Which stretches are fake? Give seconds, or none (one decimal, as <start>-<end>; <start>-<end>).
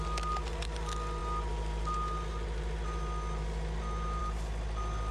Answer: none